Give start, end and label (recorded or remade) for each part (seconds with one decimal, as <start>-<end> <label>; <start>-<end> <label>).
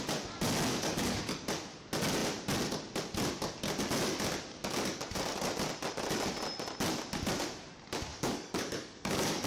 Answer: 0.0-0.7 recorded; 0.7-1.2 remade; 1.2-8.1 recorded; 8.1-9.5 remade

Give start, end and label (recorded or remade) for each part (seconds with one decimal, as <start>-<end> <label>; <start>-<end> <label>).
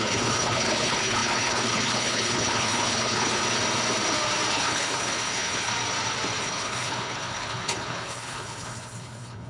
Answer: 0.0-3.4 remade; 3.4-4.5 recorded; 4.5-5.7 remade; 5.7-6.4 recorded; 6.4-9.5 remade